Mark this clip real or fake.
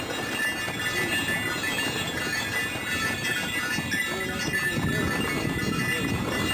real